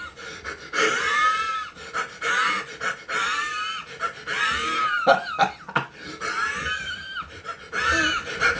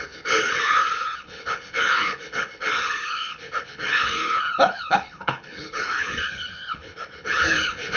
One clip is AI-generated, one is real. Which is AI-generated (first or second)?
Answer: second